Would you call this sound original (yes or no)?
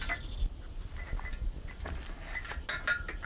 yes